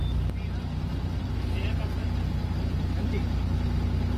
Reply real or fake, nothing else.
real